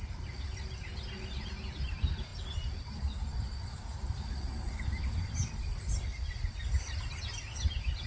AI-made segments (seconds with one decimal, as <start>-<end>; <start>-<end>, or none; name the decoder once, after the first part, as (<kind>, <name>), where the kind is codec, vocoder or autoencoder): 2.3-7.2 (vocoder, BigVGAN v2)